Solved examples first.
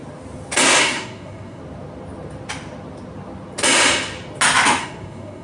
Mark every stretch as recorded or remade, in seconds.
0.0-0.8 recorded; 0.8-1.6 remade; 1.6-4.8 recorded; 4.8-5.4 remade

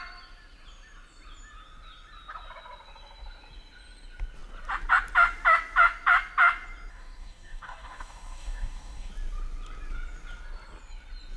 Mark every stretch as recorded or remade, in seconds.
0.0-6.9 recorded; 6.9-9.1 remade; 9.1-11.4 recorded

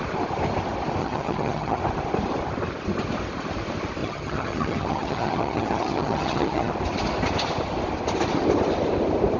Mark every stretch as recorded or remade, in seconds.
0.0-1.0 recorded; 1.0-1.8 remade; 1.8-4.0 recorded; 4.0-6.7 remade; 6.7-9.4 recorded